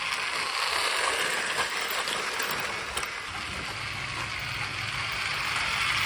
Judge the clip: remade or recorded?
recorded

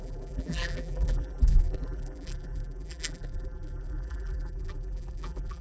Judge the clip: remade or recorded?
remade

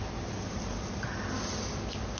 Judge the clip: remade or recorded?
recorded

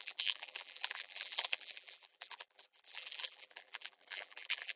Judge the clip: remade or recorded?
remade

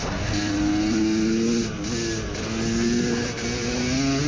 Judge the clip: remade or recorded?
recorded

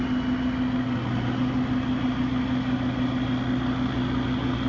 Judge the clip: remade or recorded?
recorded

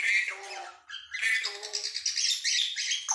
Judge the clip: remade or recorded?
recorded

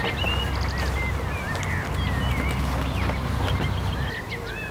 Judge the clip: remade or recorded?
recorded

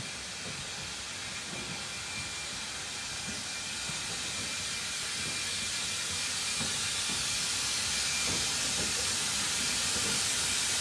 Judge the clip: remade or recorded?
recorded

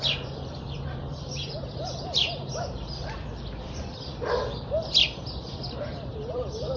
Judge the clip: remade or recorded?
remade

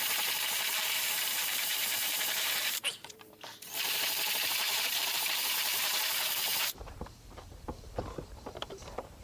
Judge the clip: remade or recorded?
remade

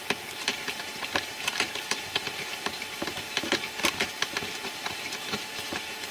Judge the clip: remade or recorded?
remade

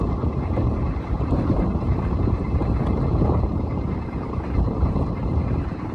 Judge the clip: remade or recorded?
remade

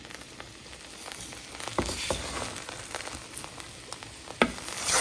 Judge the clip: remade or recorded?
recorded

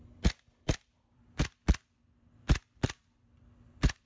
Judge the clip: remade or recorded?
remade